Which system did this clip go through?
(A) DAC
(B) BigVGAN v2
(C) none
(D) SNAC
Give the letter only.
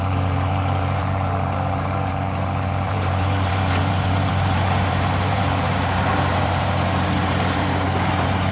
B